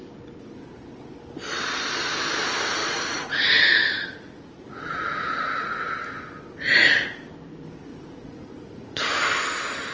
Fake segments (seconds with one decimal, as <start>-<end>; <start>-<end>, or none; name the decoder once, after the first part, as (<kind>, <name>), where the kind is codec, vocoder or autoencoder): 2.8-5.8 (vocoder, Vocos); 7.9-9.4